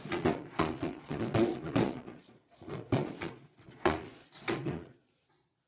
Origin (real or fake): fake